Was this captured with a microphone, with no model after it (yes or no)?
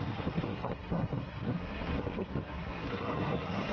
no